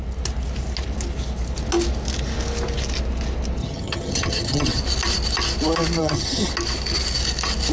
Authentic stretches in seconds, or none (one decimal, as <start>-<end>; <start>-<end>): 0.0-3.6; 4.8-6.0; 6.5-7.7

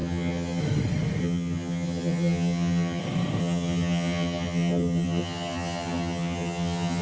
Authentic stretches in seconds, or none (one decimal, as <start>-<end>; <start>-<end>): 0.6-1.2; 3.0-3.4

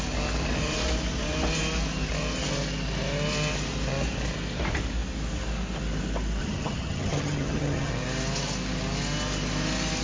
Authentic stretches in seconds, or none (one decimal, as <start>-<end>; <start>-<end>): 0.0-6.4; 7.9-10.0

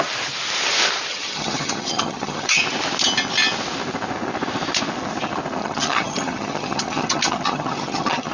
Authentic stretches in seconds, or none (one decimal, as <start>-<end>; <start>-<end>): 0.0-1.1; 2.6-5.6

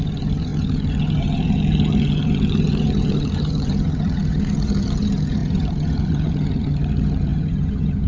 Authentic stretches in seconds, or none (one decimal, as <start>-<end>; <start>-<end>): none

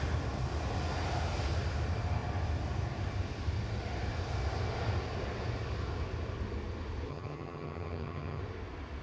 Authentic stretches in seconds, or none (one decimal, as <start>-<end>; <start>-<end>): 0.0-7.1; 8.4-9.0